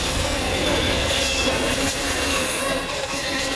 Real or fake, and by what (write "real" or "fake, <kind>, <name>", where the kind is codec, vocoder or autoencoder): fake, codec, SNAC